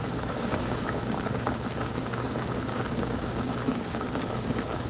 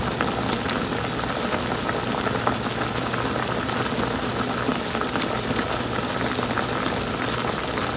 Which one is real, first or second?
second